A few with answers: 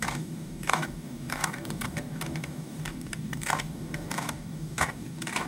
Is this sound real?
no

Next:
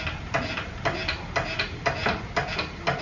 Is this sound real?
yes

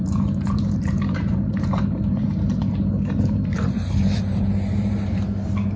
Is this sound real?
no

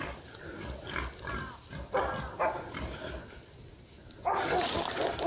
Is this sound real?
yes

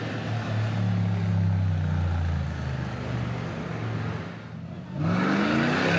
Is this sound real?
yes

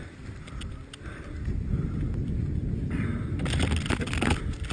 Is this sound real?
yes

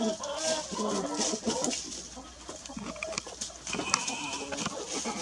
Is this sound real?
yes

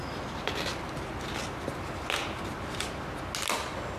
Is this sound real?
yes